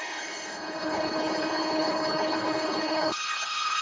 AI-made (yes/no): yes